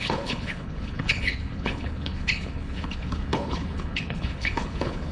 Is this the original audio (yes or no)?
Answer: no